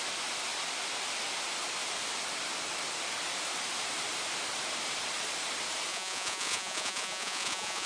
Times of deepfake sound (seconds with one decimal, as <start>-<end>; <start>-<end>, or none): 5.9-7.9